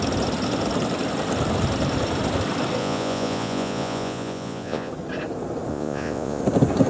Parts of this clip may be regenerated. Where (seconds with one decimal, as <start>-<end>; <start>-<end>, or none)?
2.8-4.9; 5.7-6.4